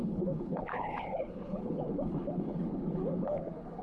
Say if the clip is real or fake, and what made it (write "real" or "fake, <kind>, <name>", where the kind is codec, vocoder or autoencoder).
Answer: fake, codec, HILCodec